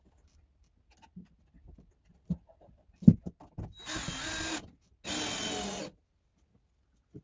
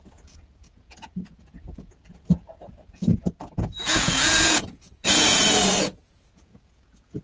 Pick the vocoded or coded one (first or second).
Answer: second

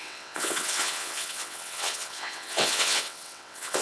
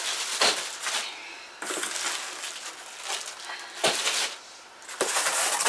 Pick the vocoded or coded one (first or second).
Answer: first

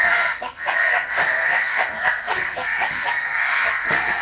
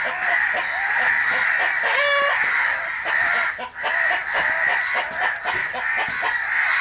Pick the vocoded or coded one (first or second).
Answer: first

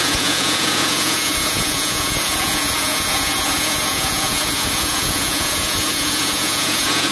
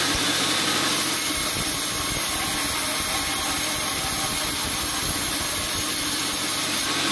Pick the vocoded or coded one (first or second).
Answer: first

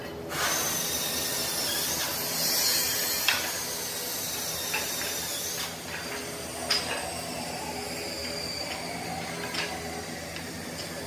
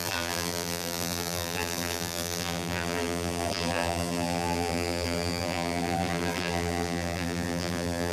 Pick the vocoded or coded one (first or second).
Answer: second